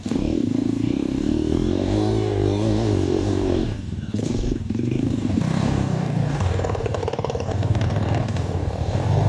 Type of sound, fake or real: fake